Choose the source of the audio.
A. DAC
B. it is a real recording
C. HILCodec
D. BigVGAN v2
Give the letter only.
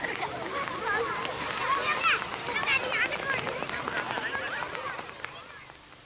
B